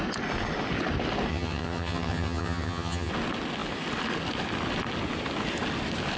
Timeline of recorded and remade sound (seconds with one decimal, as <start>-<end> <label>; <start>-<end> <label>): 0.0-1.3 recorded; 1.3-3.1 remade; 3.1-6.2 recorded